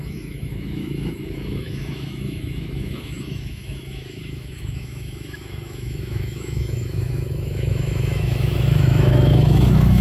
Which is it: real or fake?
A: fake